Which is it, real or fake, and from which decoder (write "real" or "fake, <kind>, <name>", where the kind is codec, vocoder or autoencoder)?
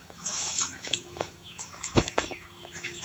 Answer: fake, autoencoder, DAC-VAE